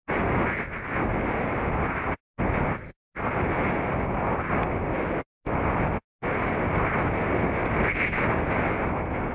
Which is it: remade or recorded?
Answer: recorded